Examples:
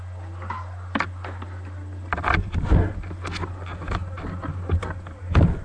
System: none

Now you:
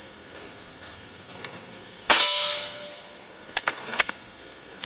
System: codec, SNAC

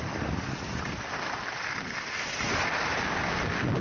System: none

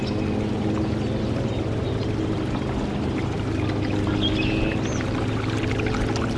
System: none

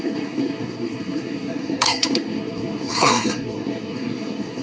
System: codec, SNAC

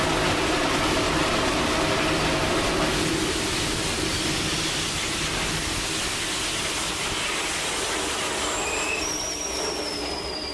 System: none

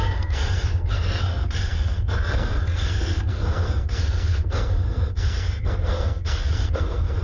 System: codec, SNAC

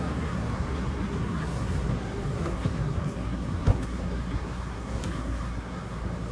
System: codec, SNAC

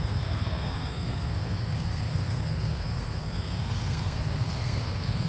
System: codec, SNAC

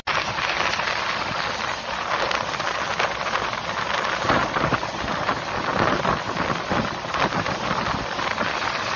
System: none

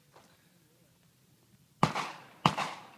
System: none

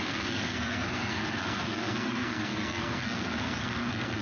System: codec, SNAC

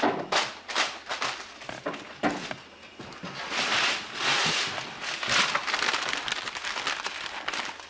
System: none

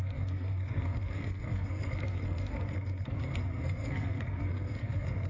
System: codec, SNAC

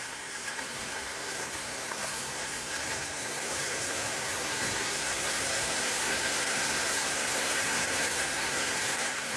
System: codec, SNAC